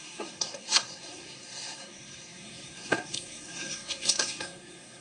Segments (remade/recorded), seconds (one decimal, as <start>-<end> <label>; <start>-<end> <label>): 0.0-5.0 remade

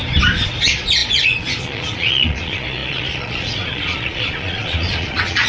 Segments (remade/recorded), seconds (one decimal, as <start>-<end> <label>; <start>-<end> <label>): 0.0-0.6 recorded; 0.6-5.5 remade

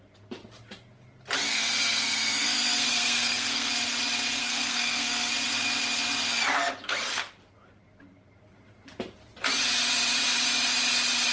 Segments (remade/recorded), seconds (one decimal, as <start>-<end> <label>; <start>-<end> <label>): 0.0-1.5 recorded; 1.5-3.7 remade; 3.7-4.4 recorded; 4.4-5.3 remade; 5.3-11.3 recorded

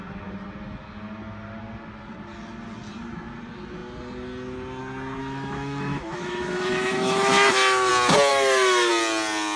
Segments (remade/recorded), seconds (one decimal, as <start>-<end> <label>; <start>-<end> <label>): 0.0-5.2 recorded; 5.2-7.9 remade; 7.9-8.3 recorded; 8.3-8.9 remade; 8.9-9.6 recorded